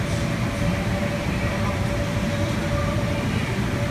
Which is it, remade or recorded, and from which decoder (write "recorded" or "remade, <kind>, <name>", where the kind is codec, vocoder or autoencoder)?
recorded